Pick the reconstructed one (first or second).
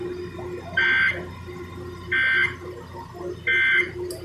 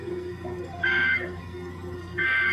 second